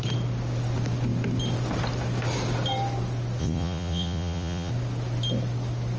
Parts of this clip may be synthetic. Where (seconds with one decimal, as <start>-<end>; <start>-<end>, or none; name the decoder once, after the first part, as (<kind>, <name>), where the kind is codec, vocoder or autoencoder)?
3.4-4.7 (vocoder, Vocos)